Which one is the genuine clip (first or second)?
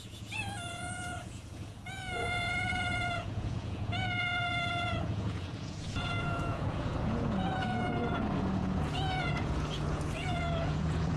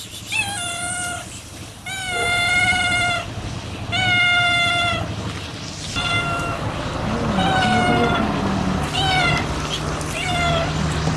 second